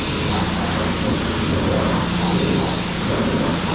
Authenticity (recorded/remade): recorded